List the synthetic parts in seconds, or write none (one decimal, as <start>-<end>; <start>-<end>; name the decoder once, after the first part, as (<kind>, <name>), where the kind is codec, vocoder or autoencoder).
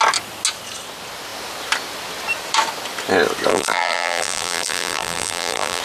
3.5-5.8 (vocoder, BigVGAN v2)